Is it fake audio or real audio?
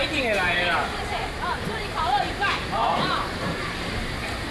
fake